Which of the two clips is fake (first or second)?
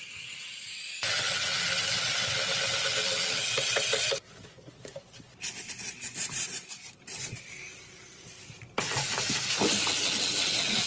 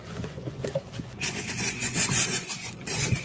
second